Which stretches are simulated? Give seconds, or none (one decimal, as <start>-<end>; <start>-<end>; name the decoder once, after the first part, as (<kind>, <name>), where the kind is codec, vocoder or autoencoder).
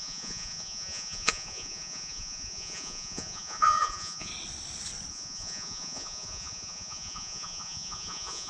0.0-4.3 (vocoder, Vocos); 5.1-8.5